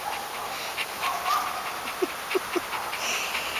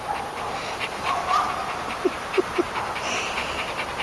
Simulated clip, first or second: second